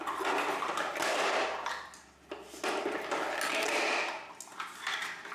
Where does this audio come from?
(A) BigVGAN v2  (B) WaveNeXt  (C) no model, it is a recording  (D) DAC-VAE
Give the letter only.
C